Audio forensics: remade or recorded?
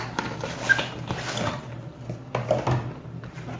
recorded